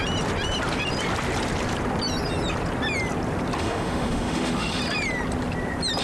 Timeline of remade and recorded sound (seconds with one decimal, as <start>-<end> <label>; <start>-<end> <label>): 0.0-3.6 recorded; 3.6-4.8 remade; 4.8-6.0 recorded